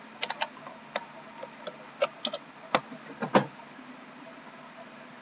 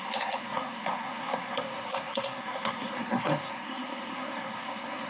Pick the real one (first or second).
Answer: first